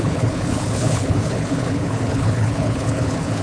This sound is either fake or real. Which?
fake